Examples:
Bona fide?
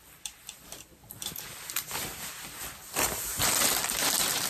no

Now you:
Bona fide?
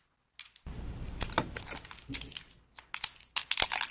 yes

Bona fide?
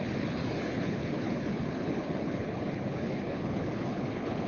no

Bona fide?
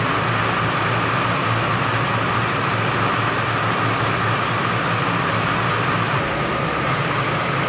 yes